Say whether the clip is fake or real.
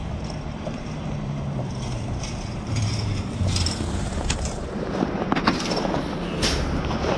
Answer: fake